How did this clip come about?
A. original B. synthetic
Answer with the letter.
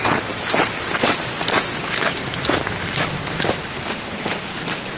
A